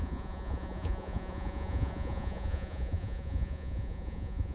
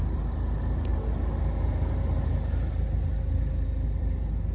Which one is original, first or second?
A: second